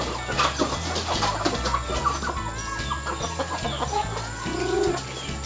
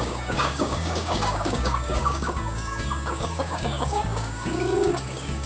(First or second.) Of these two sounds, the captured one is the first